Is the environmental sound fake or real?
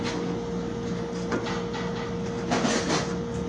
real